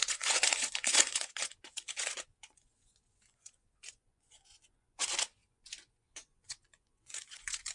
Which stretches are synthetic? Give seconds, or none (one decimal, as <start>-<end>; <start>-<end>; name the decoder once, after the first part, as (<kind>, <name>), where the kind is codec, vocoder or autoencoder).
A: 0.0-7.7 (vocoder, Vocos)